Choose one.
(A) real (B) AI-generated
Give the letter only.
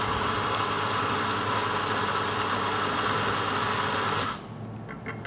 A